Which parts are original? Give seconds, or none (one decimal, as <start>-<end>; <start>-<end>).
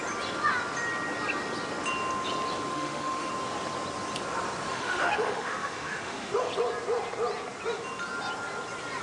0.0-2.7; 3.3-4.7; 6.5-9.0